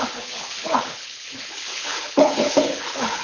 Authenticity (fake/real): fake